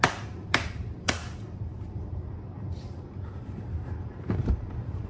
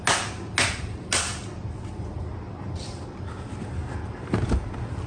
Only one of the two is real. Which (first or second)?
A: second